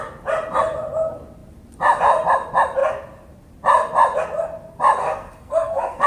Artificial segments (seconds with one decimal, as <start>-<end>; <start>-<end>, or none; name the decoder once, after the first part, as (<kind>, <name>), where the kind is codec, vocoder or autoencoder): 5.0-6.1 (codec, SNAC)